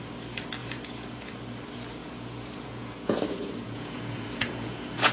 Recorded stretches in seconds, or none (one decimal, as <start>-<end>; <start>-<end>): 0.0-0.6; 1.2-2.0